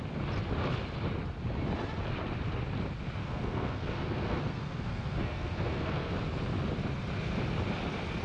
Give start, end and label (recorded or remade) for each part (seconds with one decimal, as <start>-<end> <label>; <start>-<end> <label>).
0.0-3.2 recorded; 3.2-6.1 remade; 6.1-8.2 recorded